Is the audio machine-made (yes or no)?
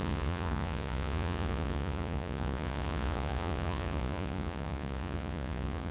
yes